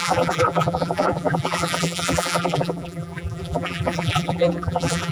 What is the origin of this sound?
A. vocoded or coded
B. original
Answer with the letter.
A